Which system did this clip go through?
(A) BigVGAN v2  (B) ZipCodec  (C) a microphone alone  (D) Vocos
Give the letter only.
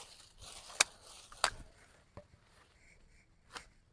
C